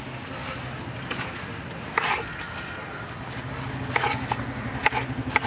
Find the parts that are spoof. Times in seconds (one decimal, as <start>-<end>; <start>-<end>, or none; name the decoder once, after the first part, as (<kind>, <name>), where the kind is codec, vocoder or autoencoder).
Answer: none